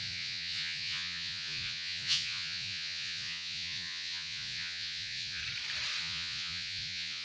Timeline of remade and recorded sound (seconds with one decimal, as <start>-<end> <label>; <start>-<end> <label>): 0.0-5.4 remade; 5.4-6.0 recorded; 6.0-7.2 remade

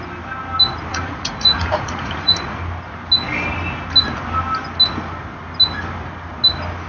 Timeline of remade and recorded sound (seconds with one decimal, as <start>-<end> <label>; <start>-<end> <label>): 0.0-0.9 recorded; 0.9-2.6 remade; 2.6-6.9 recorded